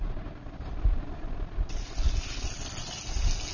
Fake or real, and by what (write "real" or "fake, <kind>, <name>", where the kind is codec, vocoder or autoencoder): real